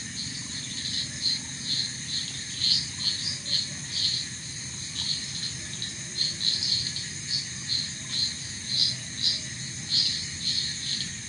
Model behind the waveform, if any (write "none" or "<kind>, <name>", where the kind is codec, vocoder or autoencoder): none